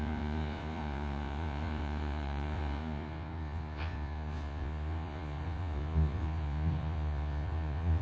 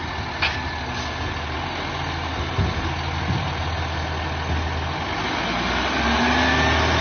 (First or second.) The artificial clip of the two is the first